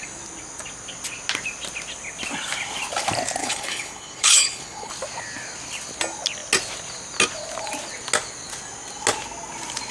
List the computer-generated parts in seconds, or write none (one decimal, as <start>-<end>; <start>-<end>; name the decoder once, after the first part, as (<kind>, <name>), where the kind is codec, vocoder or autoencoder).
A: 3.4-4.9 (codec, HILCodec)